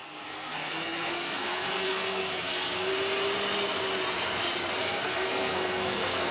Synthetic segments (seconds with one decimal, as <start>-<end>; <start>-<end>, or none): 0.0-2.9; 4.8-6.3